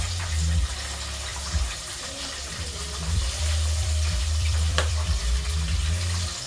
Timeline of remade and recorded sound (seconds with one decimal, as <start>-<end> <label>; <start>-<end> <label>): 0.0-1.3 recorded; 1.3-5.2 remade; 5.2-6.5 recorded

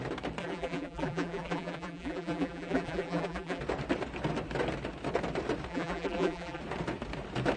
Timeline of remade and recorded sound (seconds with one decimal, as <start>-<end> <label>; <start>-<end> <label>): 0.0-0.4 recorded; 0.4-3.6 remade; 3.6-5.7 recorded; 5.7-6.6 remade; 6.6-7.6 recorded

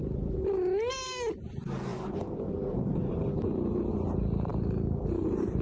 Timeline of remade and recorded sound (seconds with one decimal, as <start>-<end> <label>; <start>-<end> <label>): 0.0-5.6 recorded